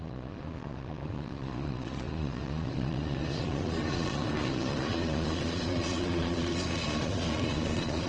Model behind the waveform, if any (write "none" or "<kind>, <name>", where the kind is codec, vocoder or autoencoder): vocoder, Vocos